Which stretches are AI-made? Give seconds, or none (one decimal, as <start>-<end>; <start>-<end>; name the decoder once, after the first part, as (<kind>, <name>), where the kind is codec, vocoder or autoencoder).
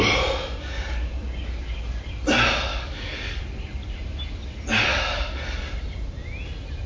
2.7-3.4 (codec, DAC); 4.9-5.6